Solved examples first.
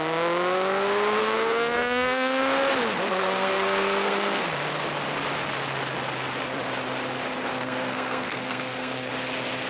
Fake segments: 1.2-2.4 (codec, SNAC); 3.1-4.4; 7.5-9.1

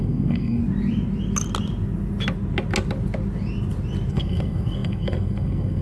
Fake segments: 0.0-0.6 (codec, SNAC); 4.1-5.8

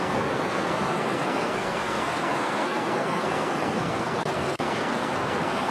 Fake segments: 0.0-5.7 (codec, SNAC)

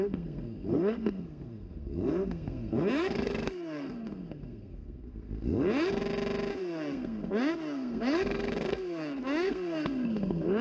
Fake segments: 0.0-6.0 (codec, SNAC); 6.6-10.6

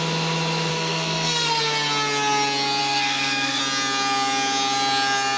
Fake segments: 0.7-1.6 (codec, SNAC); 2.8-3.6

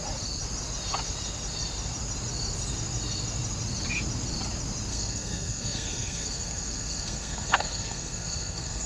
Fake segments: 4.9-8.9 (codec, SNAC)